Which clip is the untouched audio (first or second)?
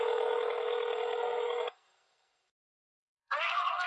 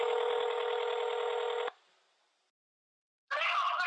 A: second